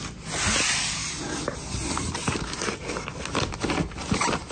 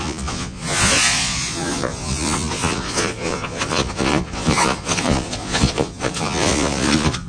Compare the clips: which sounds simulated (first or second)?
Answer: second